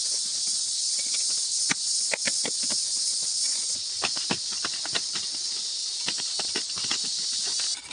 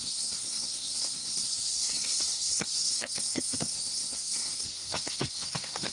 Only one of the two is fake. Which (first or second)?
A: second